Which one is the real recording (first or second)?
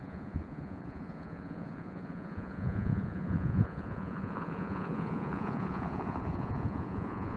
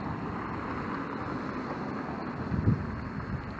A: second